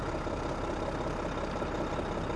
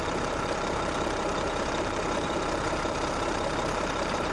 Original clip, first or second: first